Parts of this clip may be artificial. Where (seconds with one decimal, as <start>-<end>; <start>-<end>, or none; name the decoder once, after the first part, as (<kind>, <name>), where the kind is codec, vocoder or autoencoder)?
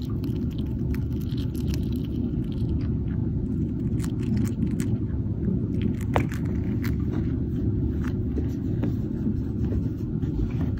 none